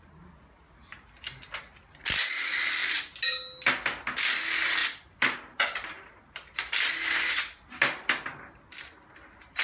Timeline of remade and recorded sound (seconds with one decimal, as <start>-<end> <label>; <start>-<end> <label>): 0.0-4.8 recorded; 4.8-6.6 remade; 6.6-9.6 recorded